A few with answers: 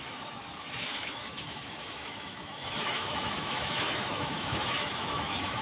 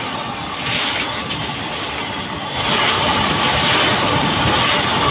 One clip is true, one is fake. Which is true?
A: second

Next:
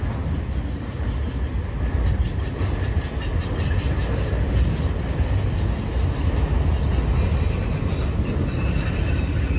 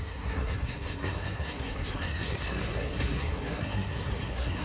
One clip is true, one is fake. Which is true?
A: first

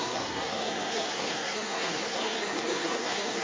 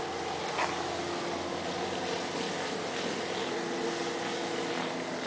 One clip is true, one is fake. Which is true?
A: second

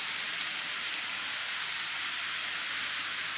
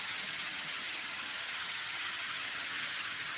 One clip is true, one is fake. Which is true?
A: first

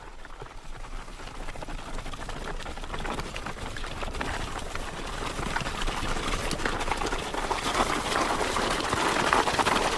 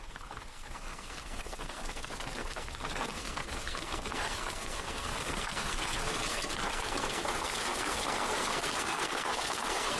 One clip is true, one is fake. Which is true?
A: first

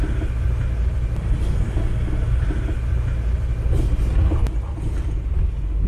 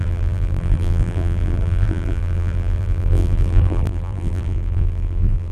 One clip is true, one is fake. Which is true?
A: first